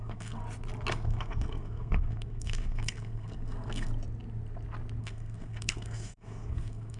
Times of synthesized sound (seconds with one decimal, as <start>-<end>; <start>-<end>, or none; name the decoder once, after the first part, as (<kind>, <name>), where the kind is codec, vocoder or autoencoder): 0.0-0.4 (codec, SNAC); 0.9-3.9; 5.0-7.0